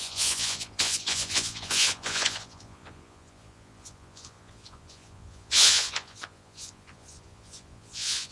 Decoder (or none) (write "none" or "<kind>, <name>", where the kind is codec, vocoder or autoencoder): vocoder, Vocos